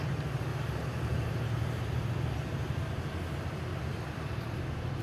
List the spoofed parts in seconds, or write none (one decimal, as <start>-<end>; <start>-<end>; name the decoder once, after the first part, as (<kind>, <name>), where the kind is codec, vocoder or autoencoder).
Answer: 0.5-2.8 (vocoder, BigVGAN v2); 3.7-4.3